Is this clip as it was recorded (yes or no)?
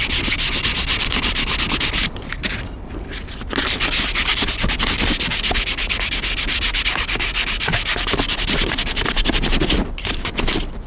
yes